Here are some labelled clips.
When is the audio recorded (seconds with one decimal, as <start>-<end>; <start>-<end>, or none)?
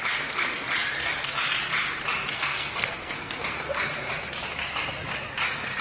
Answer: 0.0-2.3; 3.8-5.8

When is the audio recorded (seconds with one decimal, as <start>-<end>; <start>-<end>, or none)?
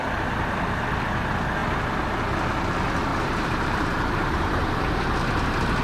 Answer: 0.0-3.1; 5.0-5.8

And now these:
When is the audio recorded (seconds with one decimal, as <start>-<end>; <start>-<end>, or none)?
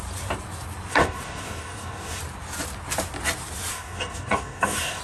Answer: 0.0-0.9; 2.2-3.7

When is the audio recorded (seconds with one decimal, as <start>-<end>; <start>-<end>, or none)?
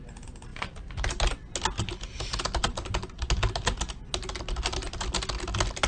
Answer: 0.0-5.9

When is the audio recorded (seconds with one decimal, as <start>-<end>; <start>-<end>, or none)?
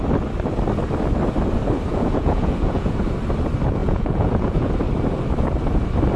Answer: 0.0-1.9; 3.0-3.8; 4.7-6.2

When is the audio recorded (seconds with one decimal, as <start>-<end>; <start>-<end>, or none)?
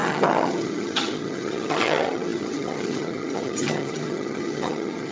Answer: none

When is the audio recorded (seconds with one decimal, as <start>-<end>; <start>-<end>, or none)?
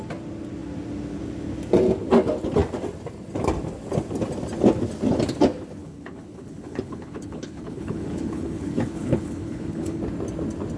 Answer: 0.0-5.8; 10.0-10.8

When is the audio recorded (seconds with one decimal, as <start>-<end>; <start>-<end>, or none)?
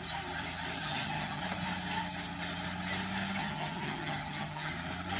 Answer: 0.0-0.8; 1.4-3.4; 4.7-5.2